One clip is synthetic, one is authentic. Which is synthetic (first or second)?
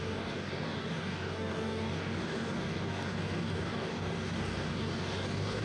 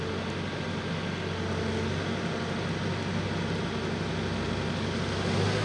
first